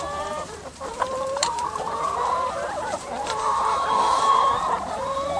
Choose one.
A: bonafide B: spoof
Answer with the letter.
B